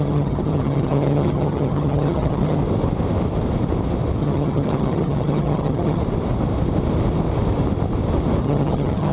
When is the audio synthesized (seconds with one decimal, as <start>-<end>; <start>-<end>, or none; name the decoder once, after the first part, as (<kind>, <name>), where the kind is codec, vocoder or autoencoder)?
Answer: 0.0-2.6 (vocoder, HiFi-GAN); 4.2-6.0; 8.4-9.1